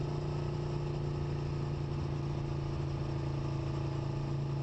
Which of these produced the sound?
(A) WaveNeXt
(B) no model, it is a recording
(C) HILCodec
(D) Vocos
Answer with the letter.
B